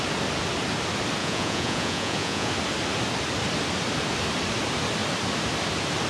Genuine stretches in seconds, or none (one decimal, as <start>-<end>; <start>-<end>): 0.0-1.2; 2.5-6.1